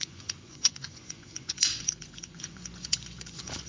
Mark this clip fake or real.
fake